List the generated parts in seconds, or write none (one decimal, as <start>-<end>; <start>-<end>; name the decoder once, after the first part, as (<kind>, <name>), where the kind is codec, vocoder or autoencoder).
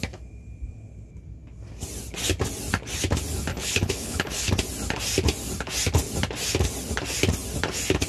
3.5-4.5 (codec, HILCodec)